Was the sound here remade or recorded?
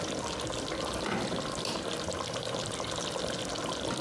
remade